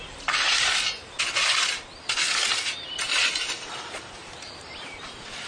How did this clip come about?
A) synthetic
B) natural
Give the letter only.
A